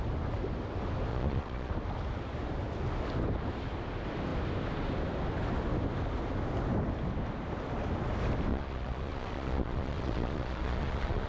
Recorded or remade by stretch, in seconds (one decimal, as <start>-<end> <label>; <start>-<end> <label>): 0.0-1.1 recorded; 1.1-1.7 remade; 1.7-8.5 recorded; 8.5-11.3 remade